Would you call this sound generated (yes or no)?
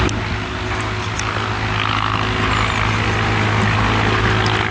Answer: no